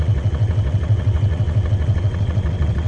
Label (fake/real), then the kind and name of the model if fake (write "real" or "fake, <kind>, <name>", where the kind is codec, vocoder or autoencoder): fake, vocoder, WaveNeXt